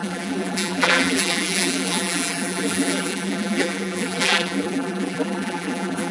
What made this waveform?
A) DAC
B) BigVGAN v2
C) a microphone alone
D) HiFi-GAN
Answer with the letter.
B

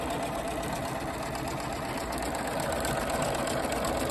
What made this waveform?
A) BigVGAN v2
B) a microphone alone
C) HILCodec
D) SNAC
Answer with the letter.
B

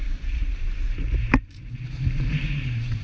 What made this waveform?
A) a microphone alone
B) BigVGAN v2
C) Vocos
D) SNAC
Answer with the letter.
B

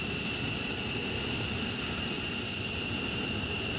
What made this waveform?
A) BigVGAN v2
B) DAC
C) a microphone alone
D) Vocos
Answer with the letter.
C